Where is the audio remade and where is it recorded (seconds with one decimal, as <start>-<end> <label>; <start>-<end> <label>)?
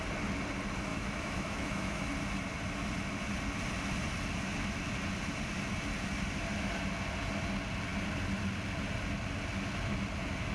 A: 0.0-0.9 recorded; 0.9-2.1 remade; 2.1-10.5 recorded